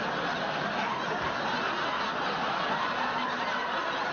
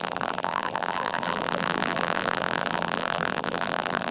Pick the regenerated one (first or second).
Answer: second